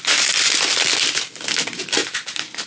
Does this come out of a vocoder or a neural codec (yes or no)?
no